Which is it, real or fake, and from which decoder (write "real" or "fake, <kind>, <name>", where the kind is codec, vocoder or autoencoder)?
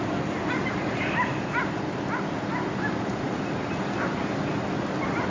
real